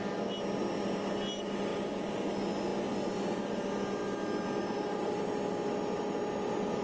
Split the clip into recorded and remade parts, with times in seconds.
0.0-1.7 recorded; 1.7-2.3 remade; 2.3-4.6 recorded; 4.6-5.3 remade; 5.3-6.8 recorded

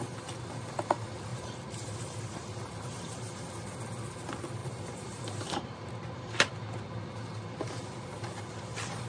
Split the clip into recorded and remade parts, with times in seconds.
0.0-1.3 recorded; 1.3-3.5 remade; 3.5-4.6 recorded; 4.6-5.9 remade; 5.9-9.1 recorded

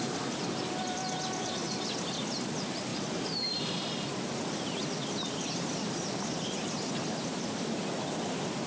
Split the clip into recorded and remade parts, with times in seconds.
0.0-2.9 recorded; 2.9-3.7 remade; 3.7-8.7 recorded

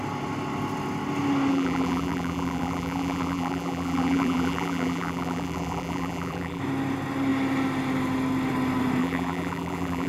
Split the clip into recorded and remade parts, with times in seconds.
0.0-1.5 recorded; 1.5-6.6 remade; 6.6-9.0 recorded; 9.0-10.1 remade